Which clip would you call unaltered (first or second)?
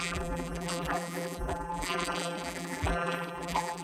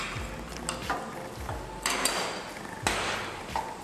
second